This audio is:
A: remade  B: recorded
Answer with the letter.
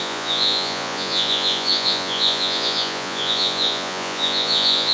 A